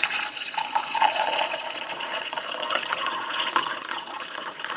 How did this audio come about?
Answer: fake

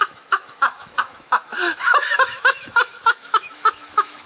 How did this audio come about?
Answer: fake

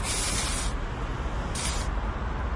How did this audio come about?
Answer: real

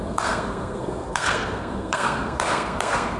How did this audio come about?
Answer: fake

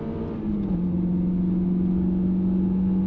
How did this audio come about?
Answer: real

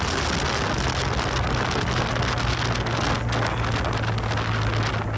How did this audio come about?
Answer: real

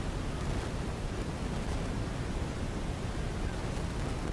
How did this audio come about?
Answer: real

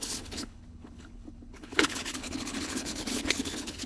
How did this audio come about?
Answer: fake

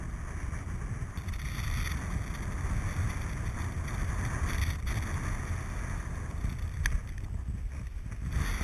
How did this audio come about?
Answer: real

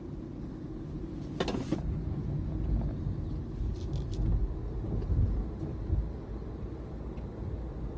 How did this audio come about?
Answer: real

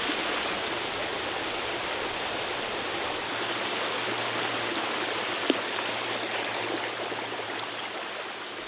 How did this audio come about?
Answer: real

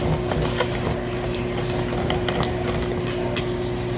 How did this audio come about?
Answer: real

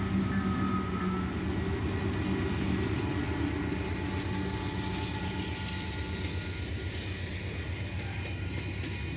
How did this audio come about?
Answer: real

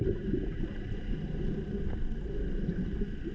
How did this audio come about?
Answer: real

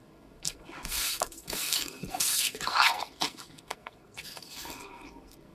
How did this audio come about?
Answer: fake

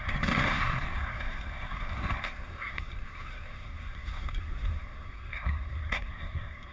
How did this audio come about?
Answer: fake